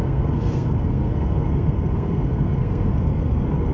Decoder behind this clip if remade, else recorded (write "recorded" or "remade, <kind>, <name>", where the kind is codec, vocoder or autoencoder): remade, codec, SNAC